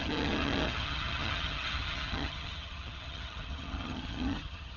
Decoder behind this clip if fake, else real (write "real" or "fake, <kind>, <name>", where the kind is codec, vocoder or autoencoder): fake, vocoder, HiFi-GAN